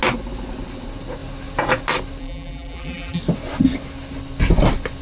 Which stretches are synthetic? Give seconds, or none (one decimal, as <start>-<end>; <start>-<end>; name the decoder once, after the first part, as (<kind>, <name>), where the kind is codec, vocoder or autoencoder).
2.2-3.2 (vocoder, BigVGAN v2)